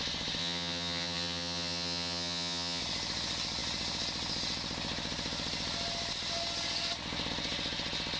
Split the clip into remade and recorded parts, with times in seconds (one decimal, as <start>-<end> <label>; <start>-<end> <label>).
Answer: 0.0-0.4 recorded; 0.4-2.8 remade; 2.8-8.2 recorded